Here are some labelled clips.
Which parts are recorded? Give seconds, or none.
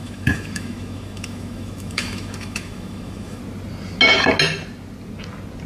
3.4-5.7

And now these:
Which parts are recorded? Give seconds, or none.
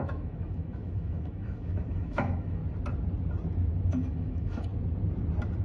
2.6-3.9; 4.7-5.6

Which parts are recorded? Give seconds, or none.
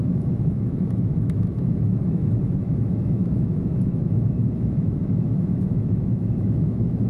none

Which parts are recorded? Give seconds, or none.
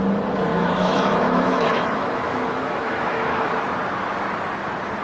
0.0-0.5; 3.5-5.0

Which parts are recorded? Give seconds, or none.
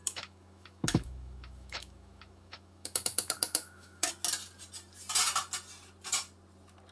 4.1-6.9